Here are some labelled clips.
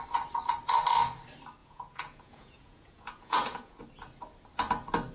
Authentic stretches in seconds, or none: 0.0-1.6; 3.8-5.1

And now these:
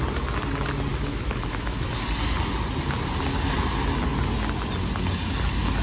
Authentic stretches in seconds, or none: 0.0-0.9; 1.9-5.8

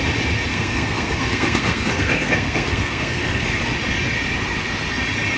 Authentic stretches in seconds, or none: 0.0-0.5; 3.6-5.4

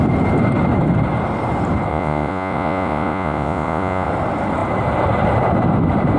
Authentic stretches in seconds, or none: 0.0-1.9; 4.1-6.2

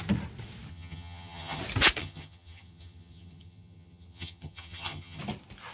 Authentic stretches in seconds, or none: 0.0-0.7; 1.6-2.0; 5.2-5.7

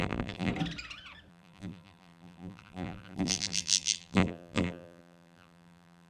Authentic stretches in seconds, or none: 0.5-1.3

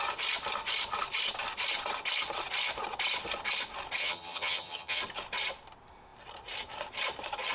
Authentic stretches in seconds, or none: 0.0-4.0; 5.0-7.5